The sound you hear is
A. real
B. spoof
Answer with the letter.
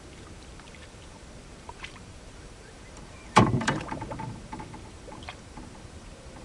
B